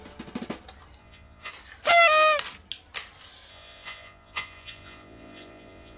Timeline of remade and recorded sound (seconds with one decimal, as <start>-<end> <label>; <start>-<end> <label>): 0.0-1.0 recorded; 1.0-1.5 remade; 1.5-3.5 recorded; 3.5-6.0 remade